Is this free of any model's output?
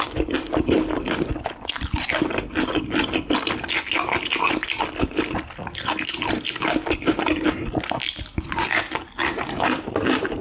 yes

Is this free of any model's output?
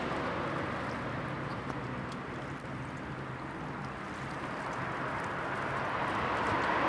yes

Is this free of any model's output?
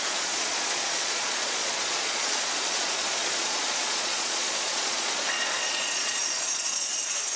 no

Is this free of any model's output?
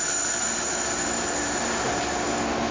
yes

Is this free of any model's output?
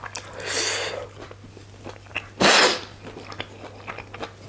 yes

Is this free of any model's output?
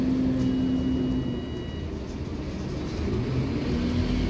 yes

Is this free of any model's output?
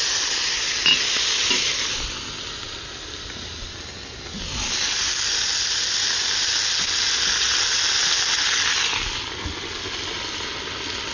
yes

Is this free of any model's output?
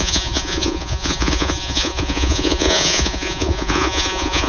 no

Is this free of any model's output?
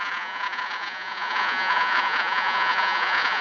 no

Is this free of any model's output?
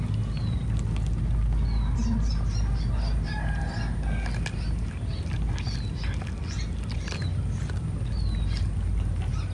yes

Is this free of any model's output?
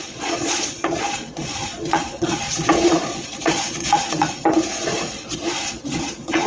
no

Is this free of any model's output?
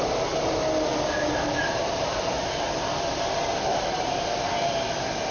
yes